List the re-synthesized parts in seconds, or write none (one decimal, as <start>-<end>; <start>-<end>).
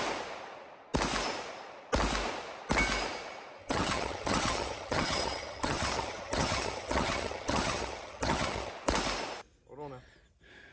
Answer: 3.6-8.7